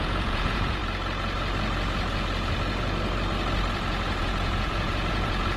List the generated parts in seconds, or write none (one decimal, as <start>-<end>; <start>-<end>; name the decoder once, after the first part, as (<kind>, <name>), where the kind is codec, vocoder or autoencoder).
0.0-0.8 (vocoder, Vocos); 4.2-5.6